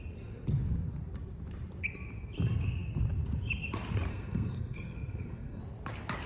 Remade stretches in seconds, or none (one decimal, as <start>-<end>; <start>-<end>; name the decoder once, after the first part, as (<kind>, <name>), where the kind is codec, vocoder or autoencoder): 4.1-5.6 (codec, SNAC)